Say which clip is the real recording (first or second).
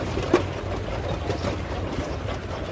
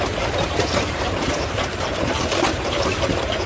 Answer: first